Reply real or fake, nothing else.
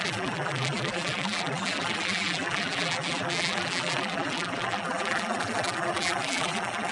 fake